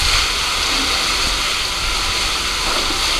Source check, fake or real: real